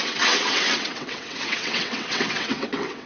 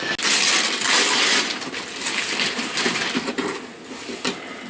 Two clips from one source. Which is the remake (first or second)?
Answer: first